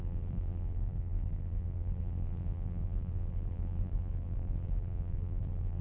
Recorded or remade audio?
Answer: remade